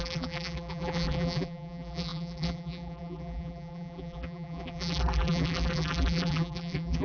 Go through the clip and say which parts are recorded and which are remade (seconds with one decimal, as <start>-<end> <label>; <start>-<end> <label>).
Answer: 0.0-7.0 remade